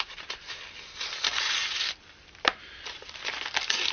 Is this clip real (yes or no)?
no